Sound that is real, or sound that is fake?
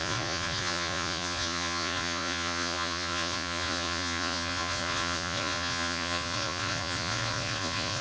fake